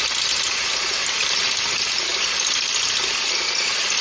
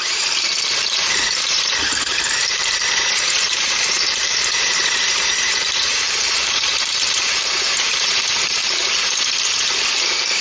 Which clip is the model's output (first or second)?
second